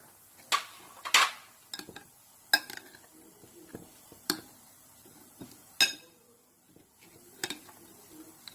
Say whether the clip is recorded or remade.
recorded